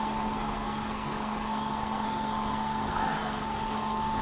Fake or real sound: fake